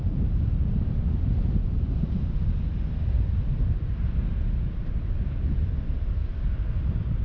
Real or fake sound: real